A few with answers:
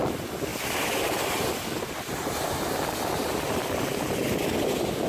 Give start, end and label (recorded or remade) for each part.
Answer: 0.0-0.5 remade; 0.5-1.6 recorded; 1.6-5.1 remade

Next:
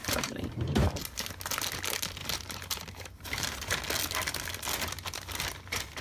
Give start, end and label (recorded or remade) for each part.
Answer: 0.0-0.9 remade; 0.9-2.2 recorded; 2.2-3.8 remade; 3.8-6.0 recorded

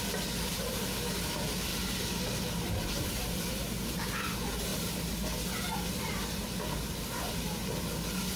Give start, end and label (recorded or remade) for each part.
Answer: 0.0-8.4 recorded

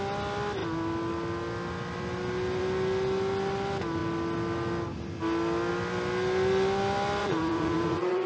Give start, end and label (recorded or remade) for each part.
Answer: 0.0-7.2 recorded; 7.2-8.3 remade

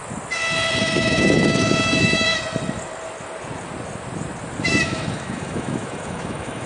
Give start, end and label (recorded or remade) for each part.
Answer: 0.0-0.8 recorded; 0.8-2.3 remade; 2.3-4.6 recorded; 4.6-6.7 remade